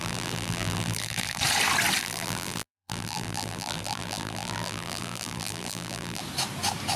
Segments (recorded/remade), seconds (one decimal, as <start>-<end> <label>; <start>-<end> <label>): 0.0-1.4 remade; 1.4-2.0 recorded; 2.0-6.2 remade; 6.2-7.0 recorded